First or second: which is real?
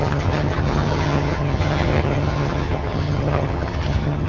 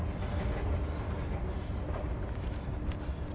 second